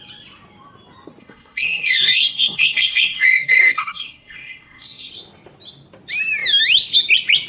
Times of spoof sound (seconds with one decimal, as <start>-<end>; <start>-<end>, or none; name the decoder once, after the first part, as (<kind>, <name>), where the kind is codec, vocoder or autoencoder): 1.2-5.1 (codec, SNAC)